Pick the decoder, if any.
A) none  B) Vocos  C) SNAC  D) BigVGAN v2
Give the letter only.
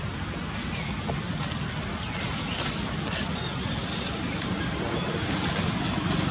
A